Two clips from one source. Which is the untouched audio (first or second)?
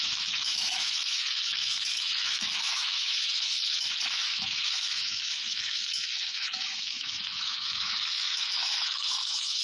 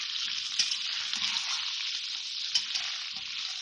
second